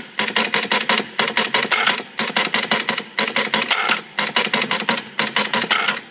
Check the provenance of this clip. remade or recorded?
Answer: recorded